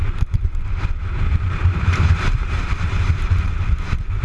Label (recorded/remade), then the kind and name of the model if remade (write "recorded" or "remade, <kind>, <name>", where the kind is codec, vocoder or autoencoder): remade, vocoder, BigVGAN v2